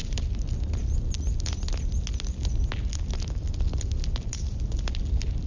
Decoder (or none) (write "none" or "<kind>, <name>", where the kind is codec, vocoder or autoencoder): none